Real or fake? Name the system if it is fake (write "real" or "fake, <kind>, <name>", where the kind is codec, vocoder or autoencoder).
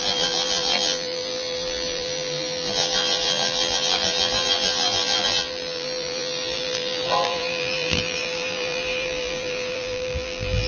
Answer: fake, vocoder, BigVGAN v2